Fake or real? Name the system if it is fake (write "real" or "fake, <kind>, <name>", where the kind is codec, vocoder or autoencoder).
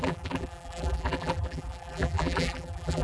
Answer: fake, vocoder, BigVGAN v2